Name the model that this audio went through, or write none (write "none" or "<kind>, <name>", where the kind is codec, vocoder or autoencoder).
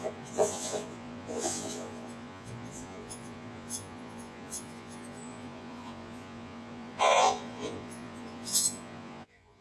vocoder, Vocos